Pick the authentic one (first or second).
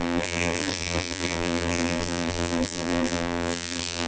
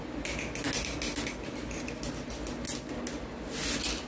second